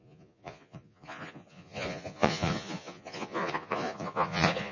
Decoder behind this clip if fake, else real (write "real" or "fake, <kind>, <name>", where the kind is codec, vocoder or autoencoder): fake, vocoder, Vocos